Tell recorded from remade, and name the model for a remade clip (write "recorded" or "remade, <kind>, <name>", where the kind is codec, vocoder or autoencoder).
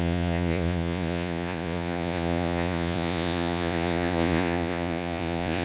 remade, vocoder, Vocos